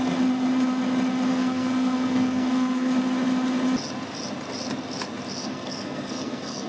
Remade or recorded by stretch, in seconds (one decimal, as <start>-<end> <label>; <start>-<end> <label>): 0.0-1.3 recorded; 1.3-2.9 remade; 2.9-5.4 recorded; 5.4-6.7 remade